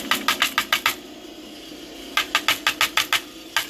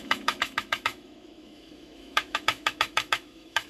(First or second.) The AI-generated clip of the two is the second